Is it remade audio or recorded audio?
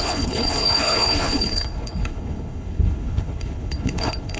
remade